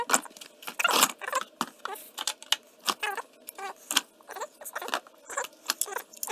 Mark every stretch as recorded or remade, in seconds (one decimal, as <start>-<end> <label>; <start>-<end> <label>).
0.0-6.3 recorded